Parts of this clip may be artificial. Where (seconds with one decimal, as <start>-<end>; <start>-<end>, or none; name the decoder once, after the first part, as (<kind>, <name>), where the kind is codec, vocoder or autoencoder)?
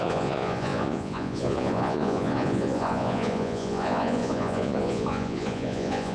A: 0.0-6.1 (vocoder, Vocos)